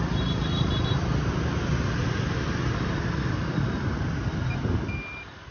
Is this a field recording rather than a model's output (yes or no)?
yes